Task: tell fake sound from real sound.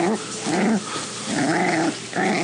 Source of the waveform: real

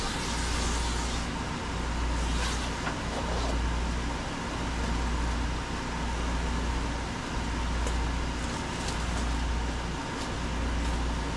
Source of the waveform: real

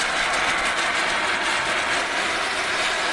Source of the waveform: real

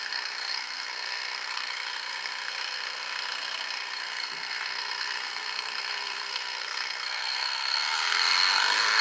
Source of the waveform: fake